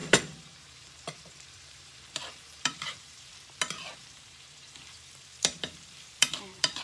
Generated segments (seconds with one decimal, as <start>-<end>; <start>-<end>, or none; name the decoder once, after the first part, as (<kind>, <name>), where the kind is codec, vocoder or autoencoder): 0.0-3.3 (vocoder, BigVGAN v2); 4.0-6.8